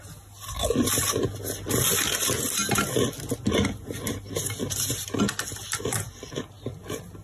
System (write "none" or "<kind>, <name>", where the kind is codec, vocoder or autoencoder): none